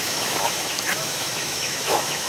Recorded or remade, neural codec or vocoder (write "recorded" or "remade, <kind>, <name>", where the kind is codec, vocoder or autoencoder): remade, autoencoder, DAC-VAE